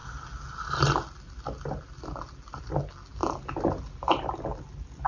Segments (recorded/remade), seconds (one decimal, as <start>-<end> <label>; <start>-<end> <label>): 0.0-5.1 recorded